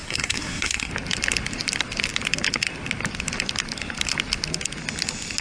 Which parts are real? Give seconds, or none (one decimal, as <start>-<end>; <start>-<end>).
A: 0.9-5.4